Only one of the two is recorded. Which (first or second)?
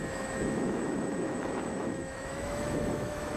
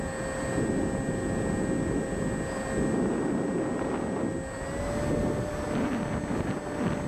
second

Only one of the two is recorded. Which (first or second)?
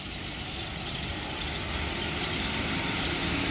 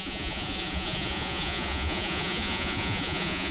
first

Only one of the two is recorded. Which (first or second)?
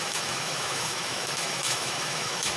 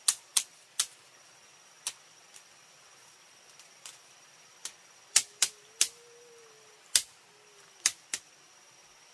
second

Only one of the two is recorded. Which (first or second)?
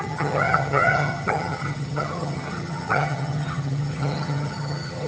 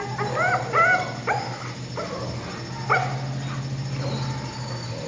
second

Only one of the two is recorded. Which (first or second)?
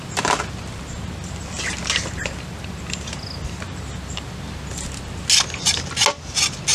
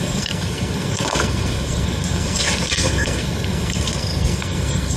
first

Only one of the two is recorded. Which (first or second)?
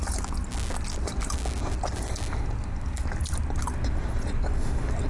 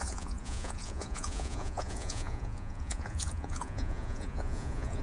first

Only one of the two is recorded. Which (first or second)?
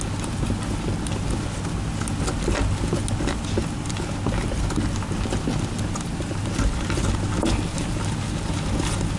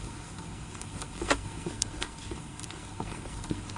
first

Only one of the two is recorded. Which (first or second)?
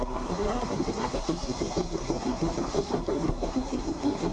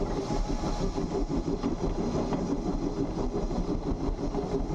second